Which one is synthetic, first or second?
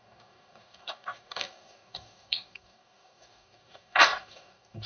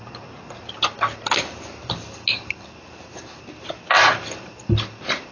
first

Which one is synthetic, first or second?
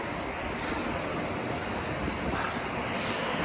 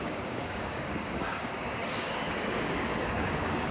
second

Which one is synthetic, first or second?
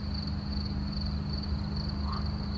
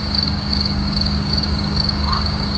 second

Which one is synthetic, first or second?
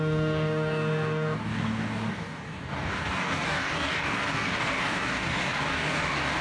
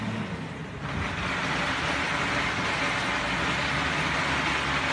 first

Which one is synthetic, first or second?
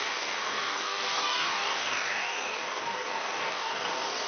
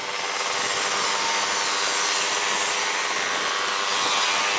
first